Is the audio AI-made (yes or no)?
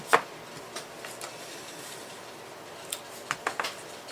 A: no